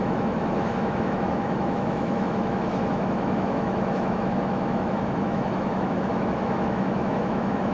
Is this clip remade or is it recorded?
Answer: remade